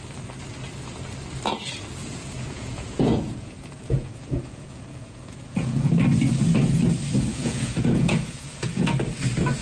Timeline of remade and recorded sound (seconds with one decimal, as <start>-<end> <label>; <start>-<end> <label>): 0.0-2.0 recorded; 2.0-5.9 remade; 5.9-7.3 recorded; 7.3-8.9 remade; 8.9-9.6 recorded